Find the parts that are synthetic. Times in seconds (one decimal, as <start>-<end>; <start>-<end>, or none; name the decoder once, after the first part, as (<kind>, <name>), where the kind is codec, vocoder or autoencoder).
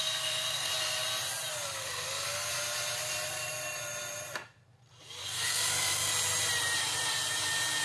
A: 0.0-0.7 (codec, SNAC); 1.8-2.5; 5.2-6.1